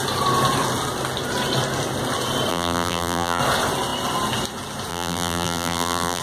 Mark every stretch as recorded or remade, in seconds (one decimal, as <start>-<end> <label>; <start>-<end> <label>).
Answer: 0.0-2.5 recorded; 2.5-3.4 remade; 3.4-4.9 recorded; 4.9-6.2 remade